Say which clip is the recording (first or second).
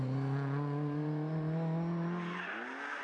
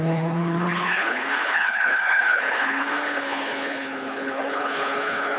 first